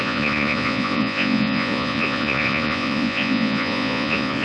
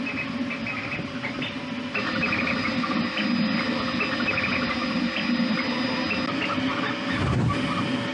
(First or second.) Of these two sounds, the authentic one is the second